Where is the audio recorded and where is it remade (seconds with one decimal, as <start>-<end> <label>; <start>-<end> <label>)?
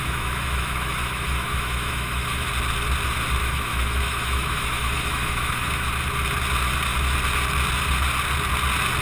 0.0-2.5 remade; 2.5-3.4 recorded; 3.4-5.9 remade; 5.9-9.0 recorded